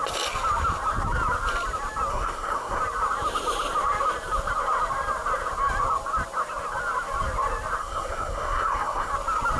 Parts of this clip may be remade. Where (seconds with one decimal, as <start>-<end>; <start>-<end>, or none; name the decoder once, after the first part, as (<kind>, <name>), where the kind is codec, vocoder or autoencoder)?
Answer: 2.1-2.8 (codec, SNAC); 7.8-9.1